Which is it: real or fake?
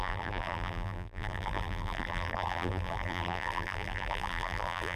fake